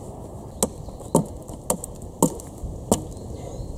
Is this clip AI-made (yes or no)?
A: no